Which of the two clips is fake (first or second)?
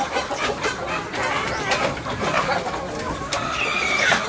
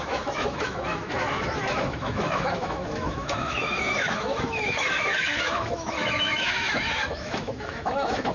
second